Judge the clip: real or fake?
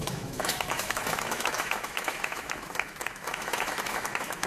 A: fake